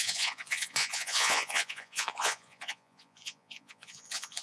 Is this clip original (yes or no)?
no